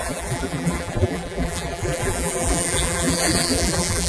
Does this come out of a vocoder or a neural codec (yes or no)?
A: yes